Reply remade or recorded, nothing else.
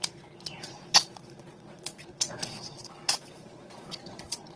remade